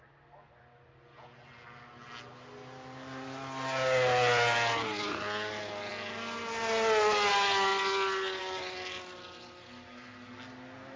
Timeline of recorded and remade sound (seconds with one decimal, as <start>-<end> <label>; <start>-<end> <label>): 0.0-11.0 recorded